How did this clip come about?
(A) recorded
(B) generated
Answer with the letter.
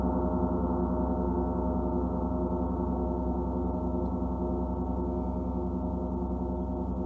A